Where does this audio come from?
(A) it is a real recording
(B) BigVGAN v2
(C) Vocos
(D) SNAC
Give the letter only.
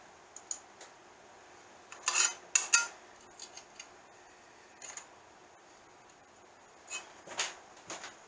A